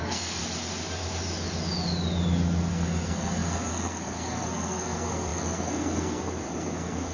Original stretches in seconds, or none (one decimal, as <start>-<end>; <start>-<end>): 0.4-2.7